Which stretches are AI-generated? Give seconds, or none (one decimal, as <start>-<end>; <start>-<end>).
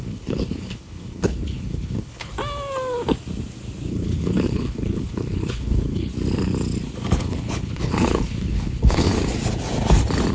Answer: 0.0-2.3; 3.9-6.1; 7.2-9.1